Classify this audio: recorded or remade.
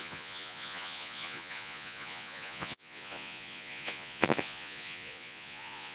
remade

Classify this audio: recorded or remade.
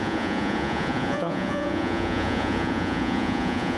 remade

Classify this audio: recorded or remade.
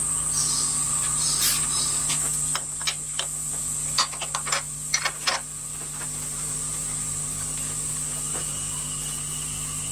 recorded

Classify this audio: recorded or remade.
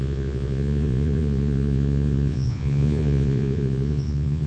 remade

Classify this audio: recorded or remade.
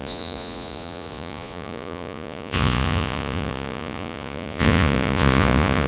remade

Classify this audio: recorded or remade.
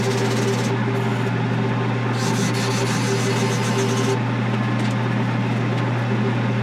recorded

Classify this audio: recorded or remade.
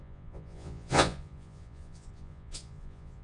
remade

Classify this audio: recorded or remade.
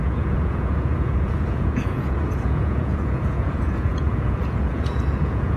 remade